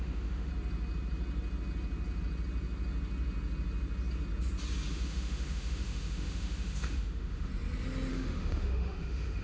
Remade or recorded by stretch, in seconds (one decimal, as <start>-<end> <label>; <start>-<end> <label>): 0.0-0.5 remade; 0.5-4.9 recorded; 4.9-7.5 remade; 7.5-8.1 recorded; 8.1-9.4 remade